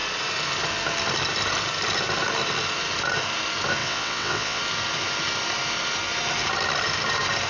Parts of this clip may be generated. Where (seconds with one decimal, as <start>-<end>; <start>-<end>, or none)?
3.8-4.6